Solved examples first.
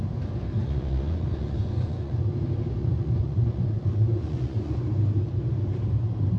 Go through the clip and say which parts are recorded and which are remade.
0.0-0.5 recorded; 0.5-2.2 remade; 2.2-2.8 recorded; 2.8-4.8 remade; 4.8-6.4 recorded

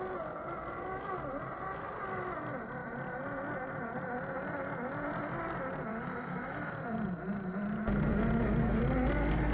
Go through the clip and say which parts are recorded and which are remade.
0.0-5.9 recorded; 5.9-6.7 remade; 6.7-9.5 recorded

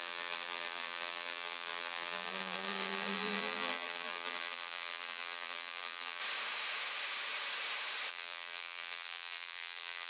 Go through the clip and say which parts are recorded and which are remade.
0.0-6.2 remade; 6.2-8.1 recorded; 8.1-10.1 remade